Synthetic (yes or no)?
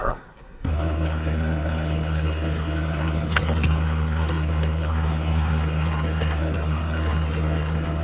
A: yes